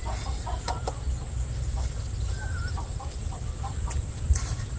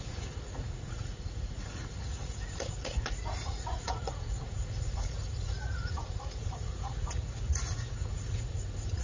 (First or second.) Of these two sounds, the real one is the first